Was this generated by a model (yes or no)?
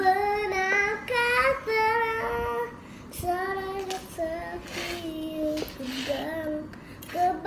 no